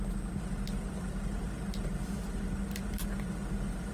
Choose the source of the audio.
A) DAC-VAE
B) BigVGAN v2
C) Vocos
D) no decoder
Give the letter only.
D